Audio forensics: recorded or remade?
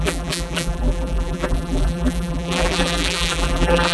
remade